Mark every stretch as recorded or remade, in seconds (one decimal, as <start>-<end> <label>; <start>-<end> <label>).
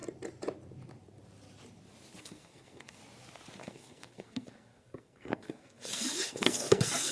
0.0-2.2 recorded; 2.2-3.0 remade; 3.0-3.6 recorded; 3.6-7.1 remade